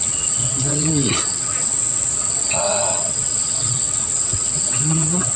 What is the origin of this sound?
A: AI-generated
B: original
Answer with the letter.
A